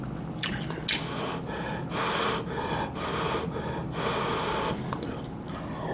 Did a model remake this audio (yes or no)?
no